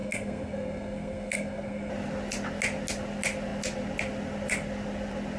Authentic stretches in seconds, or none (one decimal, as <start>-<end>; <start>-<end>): 1.9-5.4